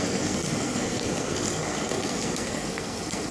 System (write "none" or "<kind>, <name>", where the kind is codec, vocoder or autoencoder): codec, SNAC